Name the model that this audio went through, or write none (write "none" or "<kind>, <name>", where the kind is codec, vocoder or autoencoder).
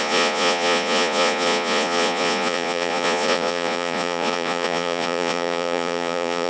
vocoder, Vocos